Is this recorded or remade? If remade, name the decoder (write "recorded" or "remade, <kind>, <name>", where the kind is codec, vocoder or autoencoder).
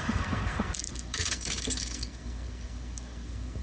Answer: remade, codec, SNAC